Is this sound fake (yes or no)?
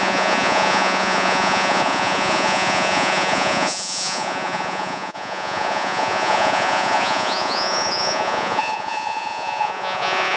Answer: yes